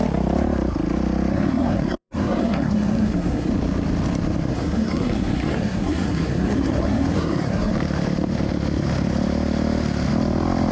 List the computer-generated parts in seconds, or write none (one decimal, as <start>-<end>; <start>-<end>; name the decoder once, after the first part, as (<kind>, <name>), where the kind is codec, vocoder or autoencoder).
1.3-3.5 (codec, SNAC); 4.5-7.7